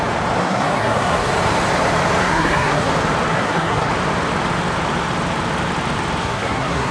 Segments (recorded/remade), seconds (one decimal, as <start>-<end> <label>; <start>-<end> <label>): 0.0-0.4 recorded; 0.4-1.3 remade; 1.3-2.2 recorded; 2.2-2.9 remade; 2.9-3.3 recorded; 3.3-3.9 remade; 3.9-6.2 recorded; 6.2-6.9 remade